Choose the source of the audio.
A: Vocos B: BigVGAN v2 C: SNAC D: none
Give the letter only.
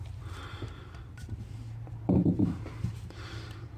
B